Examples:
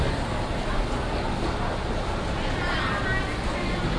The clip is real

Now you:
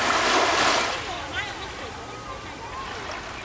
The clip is real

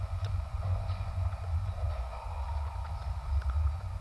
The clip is fake